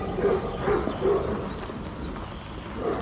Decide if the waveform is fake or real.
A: real